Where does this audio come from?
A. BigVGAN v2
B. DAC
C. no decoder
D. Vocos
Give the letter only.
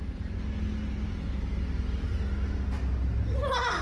C